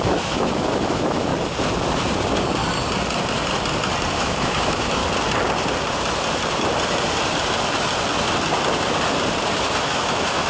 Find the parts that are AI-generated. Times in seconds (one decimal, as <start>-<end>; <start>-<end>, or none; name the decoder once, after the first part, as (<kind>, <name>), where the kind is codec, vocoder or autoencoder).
0.0-1.3 (autoencoder, DAC-VAE); 4.2-5.0; 9.8-10.5